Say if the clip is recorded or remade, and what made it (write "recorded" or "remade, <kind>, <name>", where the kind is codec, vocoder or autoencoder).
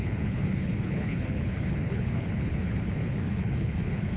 remade, codec, HILCodec